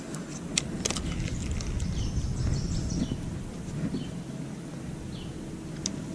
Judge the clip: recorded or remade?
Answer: recorded